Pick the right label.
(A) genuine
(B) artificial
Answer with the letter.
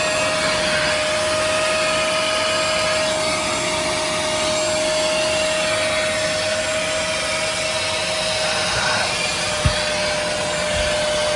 A